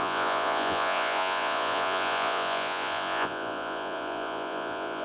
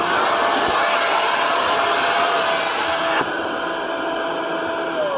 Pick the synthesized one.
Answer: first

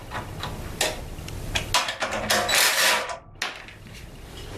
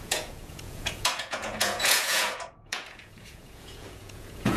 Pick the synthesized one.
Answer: second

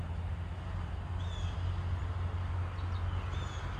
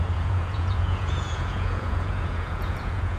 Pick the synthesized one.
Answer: second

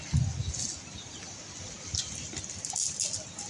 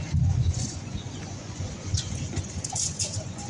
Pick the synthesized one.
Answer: second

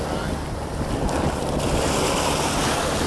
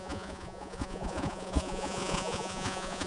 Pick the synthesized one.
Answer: second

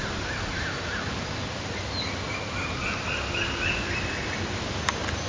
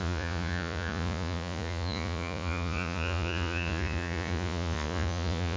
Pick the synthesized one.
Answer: second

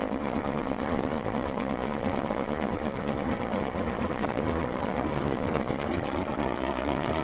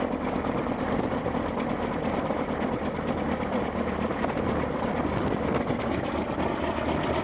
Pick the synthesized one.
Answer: first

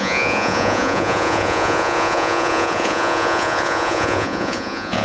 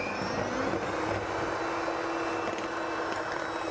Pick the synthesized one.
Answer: first